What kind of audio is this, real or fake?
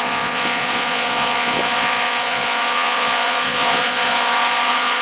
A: fake